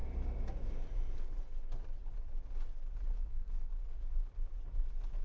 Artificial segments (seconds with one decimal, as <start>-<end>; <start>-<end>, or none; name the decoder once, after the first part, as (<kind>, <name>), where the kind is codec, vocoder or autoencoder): 3.1-3.7 (codec, SNAC)